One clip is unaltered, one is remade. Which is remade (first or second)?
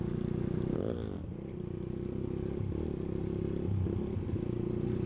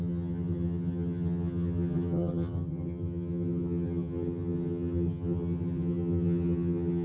second